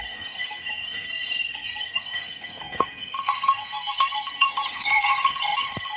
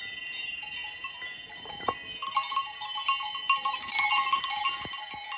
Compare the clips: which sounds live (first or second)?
second